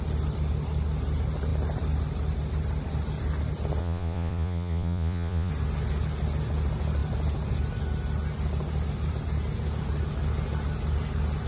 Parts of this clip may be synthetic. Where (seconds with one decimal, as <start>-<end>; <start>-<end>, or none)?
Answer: 3.8-5.5